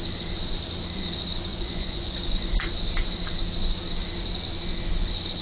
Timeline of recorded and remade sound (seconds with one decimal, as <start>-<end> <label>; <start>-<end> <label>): 0.0-1.5 recorded; 1.5-2.2 remade; 2.2-5.4 recorded